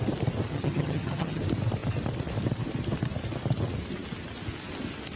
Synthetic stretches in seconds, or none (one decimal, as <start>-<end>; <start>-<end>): 0.5-1.4